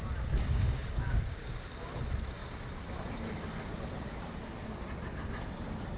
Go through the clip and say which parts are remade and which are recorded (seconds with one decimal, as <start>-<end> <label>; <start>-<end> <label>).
0.0-0.4 recorded; 0.4-2.0 remade; 2.0-6.0 recorded